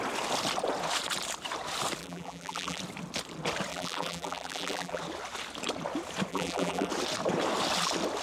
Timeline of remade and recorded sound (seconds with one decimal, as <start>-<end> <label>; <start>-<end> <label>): 0.0-2.0 recorded; 2.0-2.8 remade; 2.8-3.7 recorded; 3.7-5.0 remade; 5.0-6.3 recorded; 6.3-6.9 remade; 6.9-8.2 recorded